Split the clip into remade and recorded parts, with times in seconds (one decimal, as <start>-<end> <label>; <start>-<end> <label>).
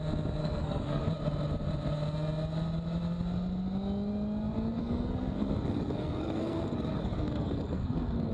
0.0-0.4 recorded; 0.4-1.0 remade; 1.0-4.8 recorded; 4.8-8.3 remade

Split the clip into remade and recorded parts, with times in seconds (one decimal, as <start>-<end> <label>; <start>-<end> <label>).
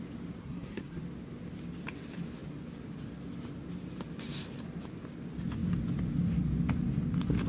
0.0-0.4 recorded; 0.4-1.0 remade; 1.0-7.5 recorded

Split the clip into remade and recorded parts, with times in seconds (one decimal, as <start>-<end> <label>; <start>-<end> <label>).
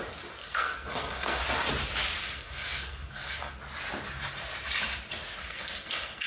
0.0-0.4 recorded; 0.4-1.4 remade; 1.4-2.2 recorded; 2.2-3.6 remade; 3.6-5.4 recorded; 5.4-6.3 remade